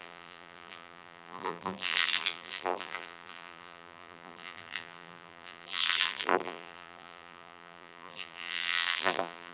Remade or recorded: remade